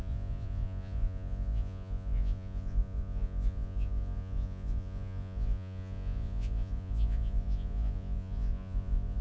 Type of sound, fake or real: fake